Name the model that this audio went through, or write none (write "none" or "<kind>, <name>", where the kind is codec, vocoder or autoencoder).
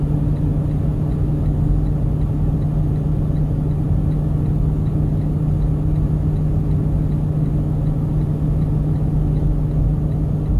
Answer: none